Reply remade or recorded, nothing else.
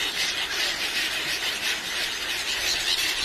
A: recorded